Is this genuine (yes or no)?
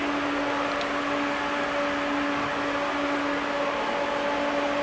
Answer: yes